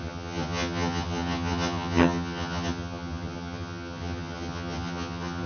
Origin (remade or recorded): remade